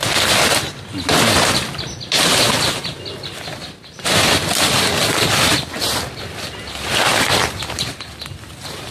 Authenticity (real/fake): real